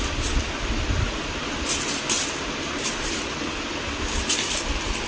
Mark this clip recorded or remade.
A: recorded